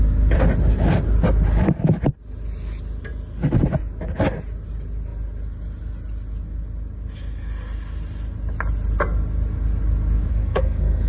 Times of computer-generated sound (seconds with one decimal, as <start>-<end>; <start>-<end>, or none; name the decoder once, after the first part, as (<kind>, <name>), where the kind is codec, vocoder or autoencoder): 10.3-11.1 (codec, SNAC)